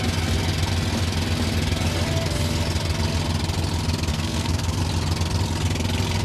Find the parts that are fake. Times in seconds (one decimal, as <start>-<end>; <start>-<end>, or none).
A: 4.1-4.8